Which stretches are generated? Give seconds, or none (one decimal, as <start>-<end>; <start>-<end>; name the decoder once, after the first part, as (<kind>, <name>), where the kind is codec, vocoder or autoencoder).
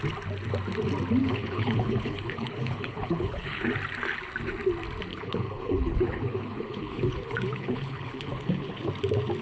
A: 1.2-3.7 (codec, HILCodec); 5.1-8.9